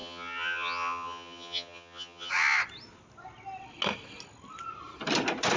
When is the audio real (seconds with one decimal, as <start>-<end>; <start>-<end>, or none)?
2.3-5.6